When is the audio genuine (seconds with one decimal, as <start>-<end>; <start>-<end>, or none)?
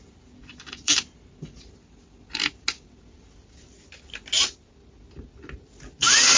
0.0-0.4; 1.0-6.4